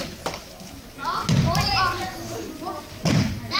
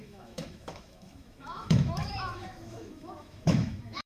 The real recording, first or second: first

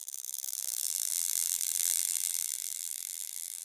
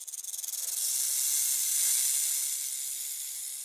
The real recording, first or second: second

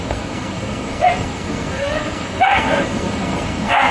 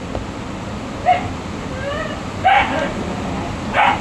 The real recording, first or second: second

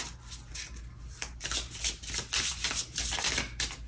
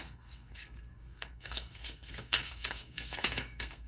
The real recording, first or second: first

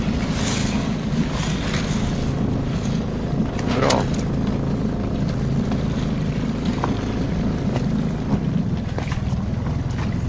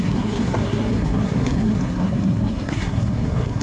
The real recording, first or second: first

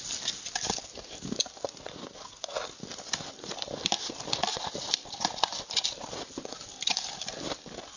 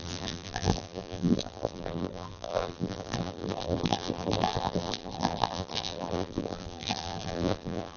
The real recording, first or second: first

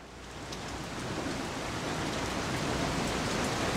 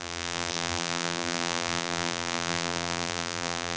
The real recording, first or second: first